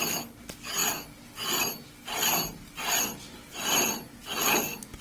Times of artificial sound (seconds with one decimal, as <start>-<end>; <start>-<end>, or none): none